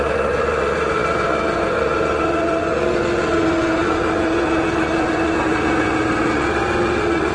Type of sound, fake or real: fake